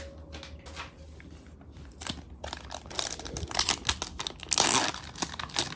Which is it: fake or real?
real